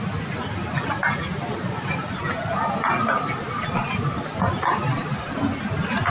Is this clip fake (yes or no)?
no